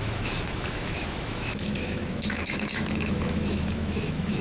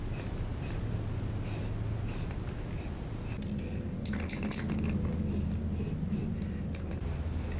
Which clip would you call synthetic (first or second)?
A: first